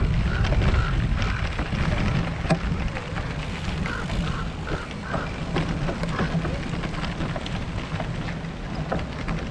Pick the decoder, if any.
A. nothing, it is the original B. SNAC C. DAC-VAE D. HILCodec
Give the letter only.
A